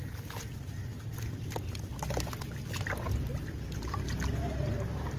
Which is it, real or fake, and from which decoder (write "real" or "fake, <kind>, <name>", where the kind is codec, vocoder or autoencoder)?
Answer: real